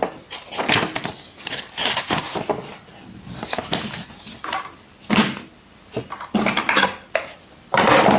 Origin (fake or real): real